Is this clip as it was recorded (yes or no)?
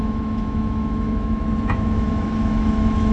no